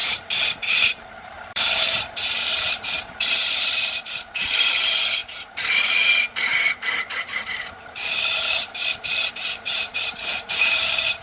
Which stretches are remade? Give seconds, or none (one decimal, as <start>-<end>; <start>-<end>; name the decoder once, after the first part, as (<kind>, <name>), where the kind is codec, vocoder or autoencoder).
0.0-11.2 (vocoder, BigVGAN v2)